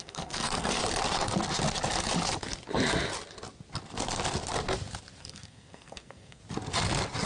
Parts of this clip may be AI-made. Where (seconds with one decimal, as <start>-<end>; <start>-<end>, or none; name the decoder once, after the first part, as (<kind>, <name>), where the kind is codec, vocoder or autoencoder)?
0.0-0.8 (codec, SNAC); 5.2-6.4